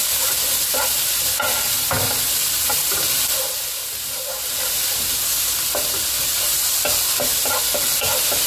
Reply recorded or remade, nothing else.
recorded